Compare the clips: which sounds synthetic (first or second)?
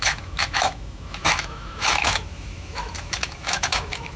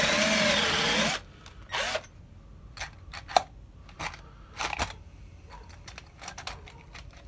first